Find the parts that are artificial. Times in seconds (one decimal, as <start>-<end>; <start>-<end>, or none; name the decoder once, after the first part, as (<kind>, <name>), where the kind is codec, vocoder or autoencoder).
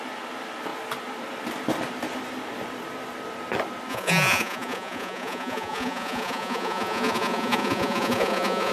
3.9-8.7 (vocoder, Vocos)